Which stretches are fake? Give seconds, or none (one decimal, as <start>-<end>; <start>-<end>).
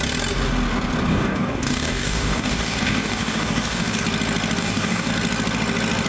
1.1-4.0; 4.6-5.1